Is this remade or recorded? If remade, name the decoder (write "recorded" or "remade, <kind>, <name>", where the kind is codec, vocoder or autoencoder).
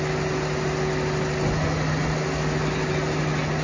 recorded